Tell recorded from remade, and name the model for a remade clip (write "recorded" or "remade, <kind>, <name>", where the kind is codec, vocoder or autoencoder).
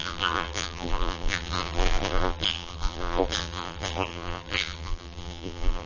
remade, vocoder, BigVGAN v2